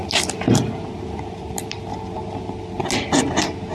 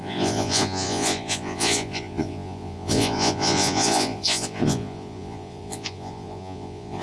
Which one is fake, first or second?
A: second